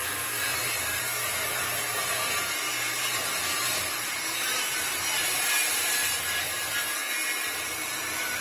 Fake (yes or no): yes